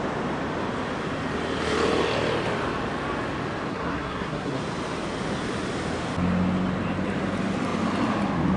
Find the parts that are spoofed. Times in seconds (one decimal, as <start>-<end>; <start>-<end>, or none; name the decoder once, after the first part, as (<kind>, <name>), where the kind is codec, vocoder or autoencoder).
3.7-4.6 (codec, SNAC)